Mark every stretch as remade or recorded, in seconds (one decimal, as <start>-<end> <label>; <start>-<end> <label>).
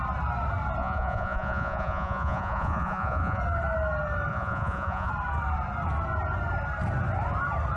0.0-0.8 recorded; 0.8-3.4 remade; 3.4-4.3 recorded; 4.3-5.1 remade; 5.1-7.8 recorded